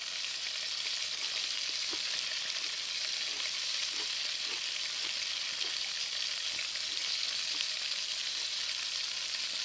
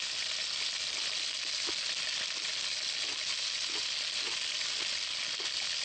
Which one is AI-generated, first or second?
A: first